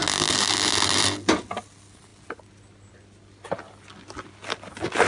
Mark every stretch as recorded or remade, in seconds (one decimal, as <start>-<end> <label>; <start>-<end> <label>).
0.0-5.1 recorded